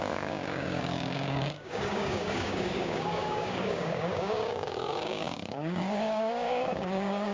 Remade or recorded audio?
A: remade